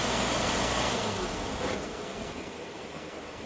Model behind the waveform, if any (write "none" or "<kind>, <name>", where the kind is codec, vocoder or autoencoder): codec, SNAC